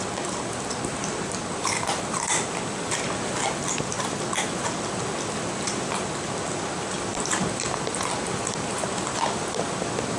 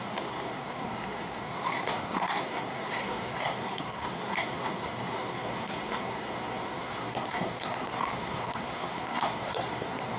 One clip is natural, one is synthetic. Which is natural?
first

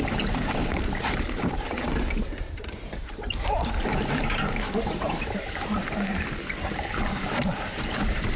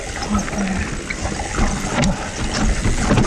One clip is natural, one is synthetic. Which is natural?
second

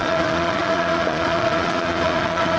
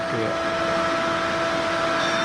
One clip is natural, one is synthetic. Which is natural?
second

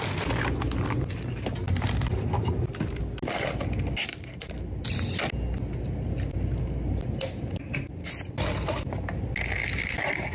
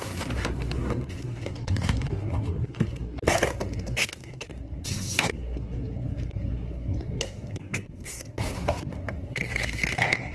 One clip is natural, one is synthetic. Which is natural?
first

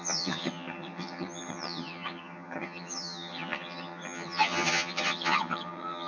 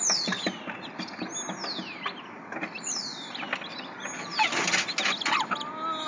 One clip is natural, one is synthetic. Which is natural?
second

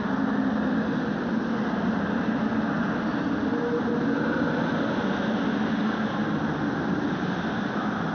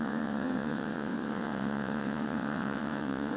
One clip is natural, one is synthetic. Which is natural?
first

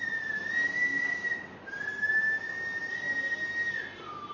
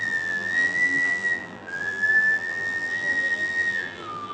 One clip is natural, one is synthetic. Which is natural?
first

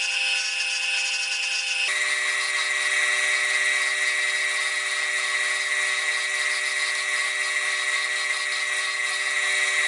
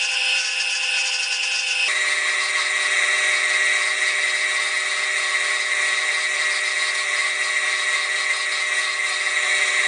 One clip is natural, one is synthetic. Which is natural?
first